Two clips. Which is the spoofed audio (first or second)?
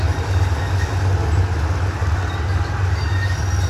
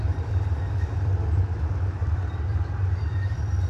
second